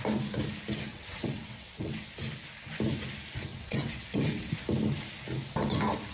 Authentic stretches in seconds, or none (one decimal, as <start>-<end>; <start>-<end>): 0.0-0.9; 2.0-3.5; 4.5-6.1